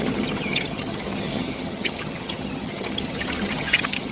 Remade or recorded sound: remade